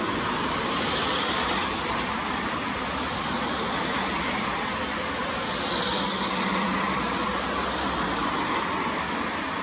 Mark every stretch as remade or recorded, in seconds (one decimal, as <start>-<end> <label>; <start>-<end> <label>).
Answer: 0.0-4.5 remade; 4.5-6.6 recorded; 6.6-9.6 remade